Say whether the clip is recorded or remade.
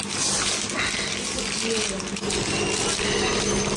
recorded